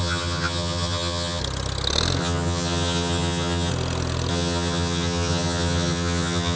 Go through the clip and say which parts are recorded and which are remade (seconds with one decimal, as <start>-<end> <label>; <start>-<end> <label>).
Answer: 0.0-1.4 remade; 1.4-2.2 recorded; 2.2-3.7 remade; 3.7-4.3 recorded; 4.3-6.6 remade